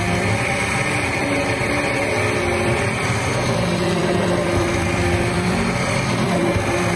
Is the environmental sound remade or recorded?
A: remade